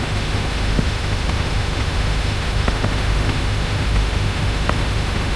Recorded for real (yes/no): no